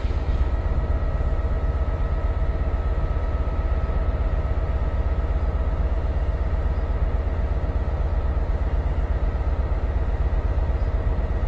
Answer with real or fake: real